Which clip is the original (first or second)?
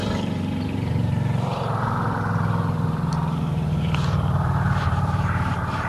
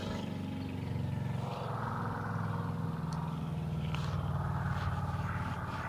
second